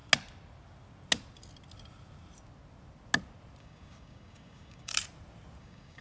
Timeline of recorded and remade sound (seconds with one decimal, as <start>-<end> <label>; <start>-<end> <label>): 0.0-3.6 recorded; 3.6-4.9 remade; 4.9-5.6 recorded; 5.6-6.0 remade